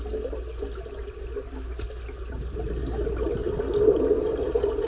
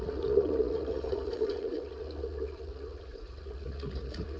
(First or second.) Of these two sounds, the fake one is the second